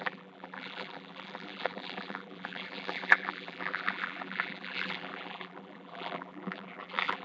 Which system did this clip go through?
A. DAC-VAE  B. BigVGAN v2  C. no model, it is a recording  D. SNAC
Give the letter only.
B